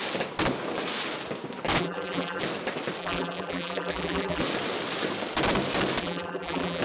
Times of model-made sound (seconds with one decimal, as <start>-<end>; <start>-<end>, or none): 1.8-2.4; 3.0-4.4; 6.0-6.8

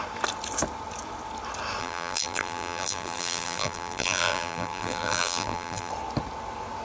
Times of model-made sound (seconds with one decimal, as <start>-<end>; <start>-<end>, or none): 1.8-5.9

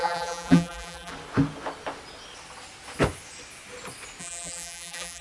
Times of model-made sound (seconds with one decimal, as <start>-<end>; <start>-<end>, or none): 0.0-1.1; 4.2-5.2

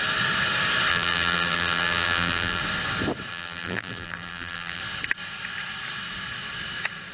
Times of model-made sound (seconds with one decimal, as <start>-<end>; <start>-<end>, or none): 0.9-2.6; 3.3-4.8

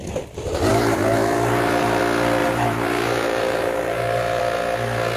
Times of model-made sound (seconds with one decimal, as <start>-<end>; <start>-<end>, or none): 0.7-2.0; 2.4-4.4